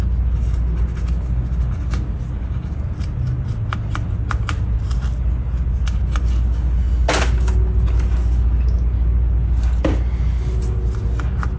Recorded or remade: recorded